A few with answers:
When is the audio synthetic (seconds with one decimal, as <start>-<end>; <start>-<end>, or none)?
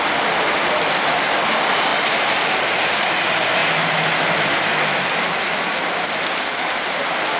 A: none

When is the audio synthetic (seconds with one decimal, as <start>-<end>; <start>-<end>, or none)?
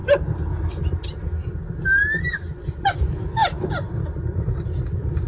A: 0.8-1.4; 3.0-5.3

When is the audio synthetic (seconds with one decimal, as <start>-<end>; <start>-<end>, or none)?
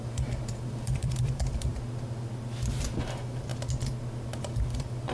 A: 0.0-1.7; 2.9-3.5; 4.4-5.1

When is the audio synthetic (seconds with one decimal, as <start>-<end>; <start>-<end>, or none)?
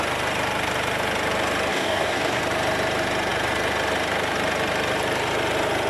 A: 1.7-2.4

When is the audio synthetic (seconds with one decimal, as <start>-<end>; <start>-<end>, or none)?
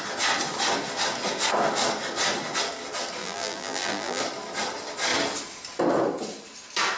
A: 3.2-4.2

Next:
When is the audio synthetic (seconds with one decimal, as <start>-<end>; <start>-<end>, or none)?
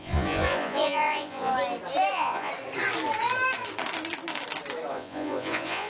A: 0.0-1.5; 2.1-2.5; 4.9-5.9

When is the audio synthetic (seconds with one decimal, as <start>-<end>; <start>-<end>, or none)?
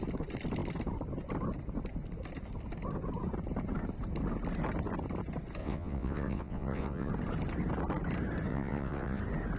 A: 5.6-7.1; 8.5-9.2